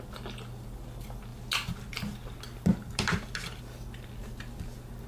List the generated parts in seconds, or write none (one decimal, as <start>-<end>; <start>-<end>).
none